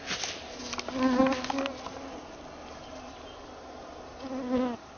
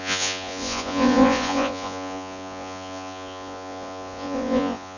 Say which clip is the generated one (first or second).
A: second